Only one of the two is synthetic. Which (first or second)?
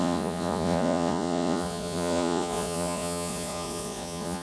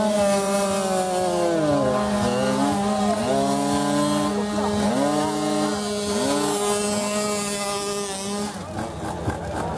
first